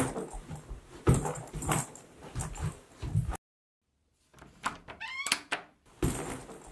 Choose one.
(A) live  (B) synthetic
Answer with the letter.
A